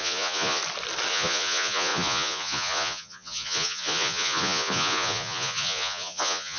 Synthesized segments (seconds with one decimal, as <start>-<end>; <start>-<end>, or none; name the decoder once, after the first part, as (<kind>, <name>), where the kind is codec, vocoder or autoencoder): 0.0-0.6 (vocoder, Vocos); 1.1-6.6